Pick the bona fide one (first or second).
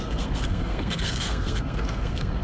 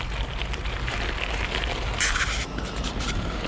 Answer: second